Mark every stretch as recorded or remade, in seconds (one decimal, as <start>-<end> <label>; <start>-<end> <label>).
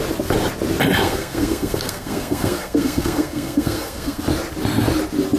0.0-1.0 recorded; 1.0-4.2 remade; 4.2-5.4 recorded